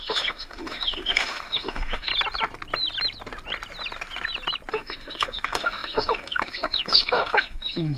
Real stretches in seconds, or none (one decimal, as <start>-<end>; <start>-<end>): 2.1-4.7